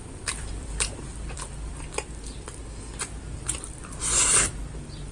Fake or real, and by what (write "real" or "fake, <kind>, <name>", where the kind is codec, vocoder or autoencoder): fake, vocoder, BigVGAN v2